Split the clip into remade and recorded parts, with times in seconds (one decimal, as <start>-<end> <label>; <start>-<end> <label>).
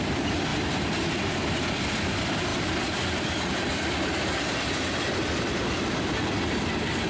0.0-2.5 recorded; 2.5-4.6 remade; 4.6-7.1 recorded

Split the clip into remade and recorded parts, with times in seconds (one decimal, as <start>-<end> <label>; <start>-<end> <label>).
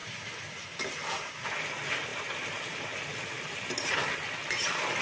0.0-1.3 remade; 1.3-5.0 recorded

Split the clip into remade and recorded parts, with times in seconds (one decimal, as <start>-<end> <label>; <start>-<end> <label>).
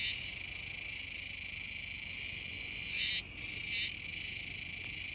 0.0-2.5 recorded; 2.5-3.1 remade; 3.1-5.1 recorded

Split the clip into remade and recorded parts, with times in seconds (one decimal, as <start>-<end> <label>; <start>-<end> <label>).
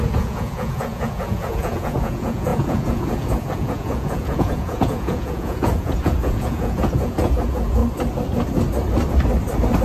0.0-7.8 remade; 7.8-9.8 recorded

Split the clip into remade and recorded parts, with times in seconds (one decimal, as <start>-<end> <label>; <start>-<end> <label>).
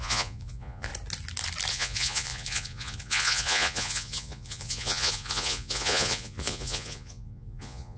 0.0-0.9 remade; 0.9-1.7 recorded; 1.7-8.0 remade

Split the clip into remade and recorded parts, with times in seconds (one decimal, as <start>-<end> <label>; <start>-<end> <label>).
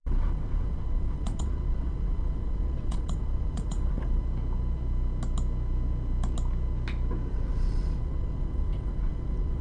0.0-4.2 remade; 4.2-7.3 recorded; 7.3-9.6 remade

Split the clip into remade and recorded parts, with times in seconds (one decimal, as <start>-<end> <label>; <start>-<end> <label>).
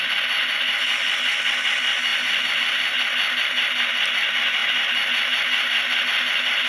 0.0-6.7 recorded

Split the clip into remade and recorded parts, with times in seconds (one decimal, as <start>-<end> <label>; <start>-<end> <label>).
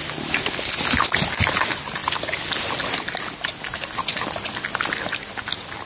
0.0-5.9 recorded